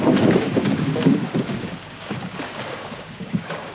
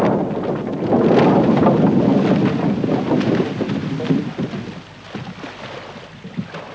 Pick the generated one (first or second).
first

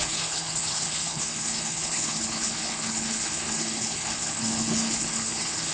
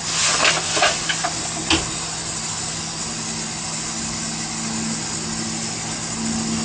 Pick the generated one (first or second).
first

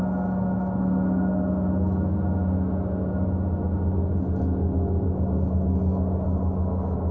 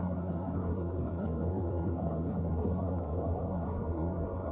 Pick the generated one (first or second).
second